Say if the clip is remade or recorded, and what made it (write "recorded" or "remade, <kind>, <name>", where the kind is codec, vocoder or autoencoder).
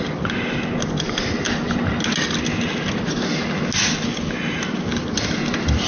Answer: recorded